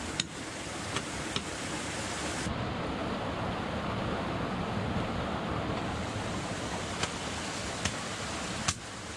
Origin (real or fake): real